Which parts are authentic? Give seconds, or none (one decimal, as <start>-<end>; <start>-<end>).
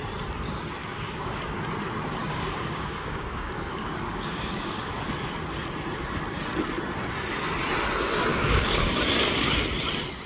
0.0-0.8; 1.4-2.2; 4.9-8.3; 9.0-10.3